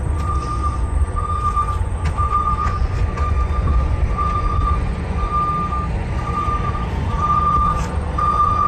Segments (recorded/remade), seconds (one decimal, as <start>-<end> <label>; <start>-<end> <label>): 0.0-5.3 remade; 5.3-5.9 recorded; 5.9-8.7 remade